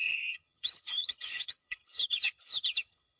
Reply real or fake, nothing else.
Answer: fake